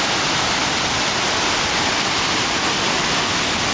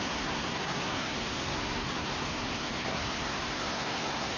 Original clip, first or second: first